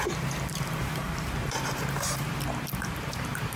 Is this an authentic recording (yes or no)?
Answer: no